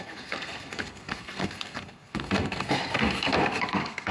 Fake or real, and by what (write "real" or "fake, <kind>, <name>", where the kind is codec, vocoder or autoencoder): fake, codec, SNAC